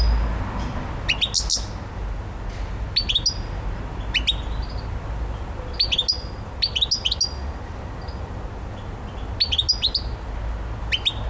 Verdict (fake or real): real